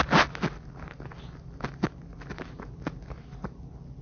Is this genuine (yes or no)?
yes